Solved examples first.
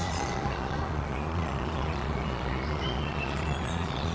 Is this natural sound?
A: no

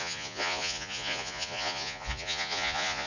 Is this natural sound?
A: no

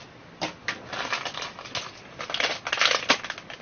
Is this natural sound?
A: yes